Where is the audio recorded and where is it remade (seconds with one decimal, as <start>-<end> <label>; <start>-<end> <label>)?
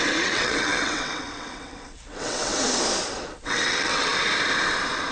0.0-2.5 remade; 2.5-3.4 recorded; 3.4-4.1 remade; 4.1-5.1 recorded